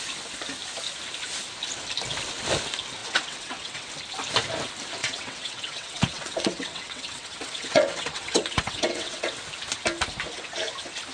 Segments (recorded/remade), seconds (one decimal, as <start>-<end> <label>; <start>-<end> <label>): 0.0-3.0 recorded; 3.0-3.9 remade; 3.9-5.0 recorded; 5.0-9.4 remade; 9.4-11.1 recorded